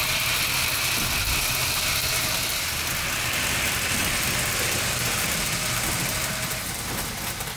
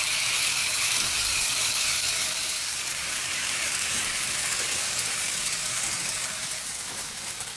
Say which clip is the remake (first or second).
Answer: second